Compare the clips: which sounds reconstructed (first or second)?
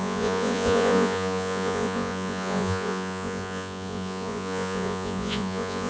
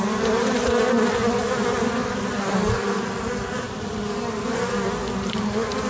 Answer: first